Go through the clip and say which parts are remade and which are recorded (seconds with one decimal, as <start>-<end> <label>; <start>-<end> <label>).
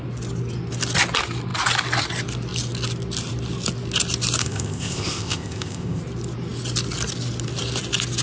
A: 0.0-4.4 recorded; 4.4-6.0 remade; 6.0-8.2 recorded